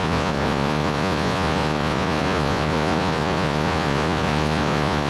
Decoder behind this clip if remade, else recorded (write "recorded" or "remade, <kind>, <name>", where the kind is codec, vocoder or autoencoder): remade, vocoder, Vocos